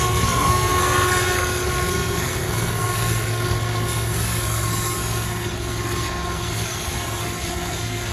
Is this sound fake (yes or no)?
yes